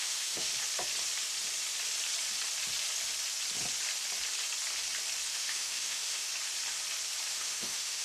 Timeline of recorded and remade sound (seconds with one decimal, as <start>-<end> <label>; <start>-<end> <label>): 0.0-0.5 remade; 0.5-5.3 recorded; 5.3-6.3 remade; 6.3-7.3 recorded; 7.3-8.0 remade